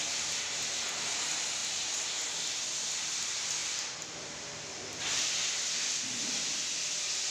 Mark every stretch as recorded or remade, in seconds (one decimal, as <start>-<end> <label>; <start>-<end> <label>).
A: 0.0-3.6 recorded; 3.6-5.5 remade; 5.5-7.3 recorded